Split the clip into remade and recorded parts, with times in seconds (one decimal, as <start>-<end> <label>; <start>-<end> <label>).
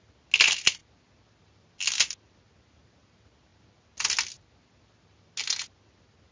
0.0-6.3 recorded